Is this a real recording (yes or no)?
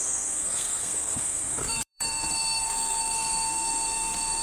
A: no